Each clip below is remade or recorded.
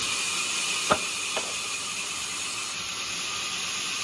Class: recorded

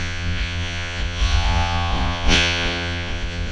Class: remade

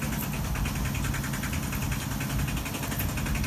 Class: recorded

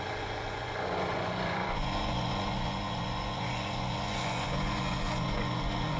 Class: remade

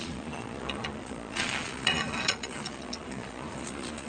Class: remade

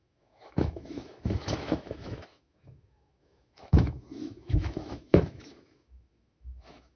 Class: remade